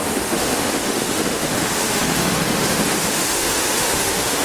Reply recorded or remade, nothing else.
remade